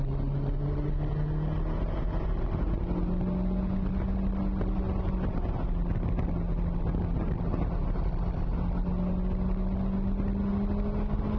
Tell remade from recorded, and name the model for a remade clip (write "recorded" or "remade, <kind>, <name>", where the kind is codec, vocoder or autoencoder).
recorded